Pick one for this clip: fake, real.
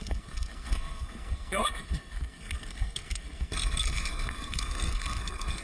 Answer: fake